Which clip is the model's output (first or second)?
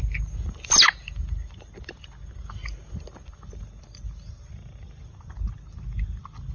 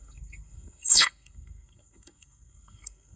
second